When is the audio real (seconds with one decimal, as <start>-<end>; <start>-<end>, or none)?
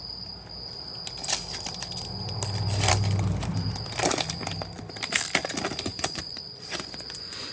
0.0-5.9